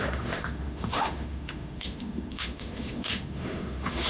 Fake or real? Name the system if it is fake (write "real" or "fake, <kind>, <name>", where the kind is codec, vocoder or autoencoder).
fake, autoencoder, DAC-VAE